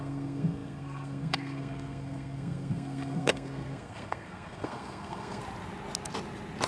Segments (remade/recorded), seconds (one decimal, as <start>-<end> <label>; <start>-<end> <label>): 0.0-5.4 remade; 5.4-6.7 recorded